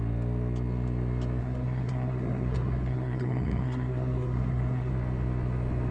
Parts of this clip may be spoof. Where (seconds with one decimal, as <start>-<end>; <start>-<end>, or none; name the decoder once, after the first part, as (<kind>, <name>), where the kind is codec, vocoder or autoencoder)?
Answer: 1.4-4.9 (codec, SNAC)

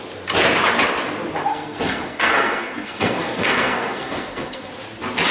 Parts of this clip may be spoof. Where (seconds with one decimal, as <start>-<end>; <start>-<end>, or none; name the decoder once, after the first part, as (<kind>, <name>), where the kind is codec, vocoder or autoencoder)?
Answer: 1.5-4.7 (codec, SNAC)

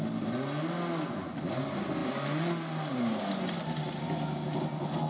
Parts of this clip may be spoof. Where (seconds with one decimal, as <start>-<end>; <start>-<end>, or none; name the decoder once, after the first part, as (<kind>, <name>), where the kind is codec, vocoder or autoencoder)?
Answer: none